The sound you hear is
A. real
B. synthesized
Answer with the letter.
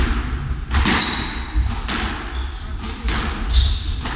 A